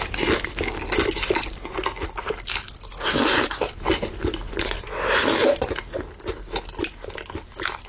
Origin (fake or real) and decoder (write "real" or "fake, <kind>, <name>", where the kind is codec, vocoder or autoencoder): real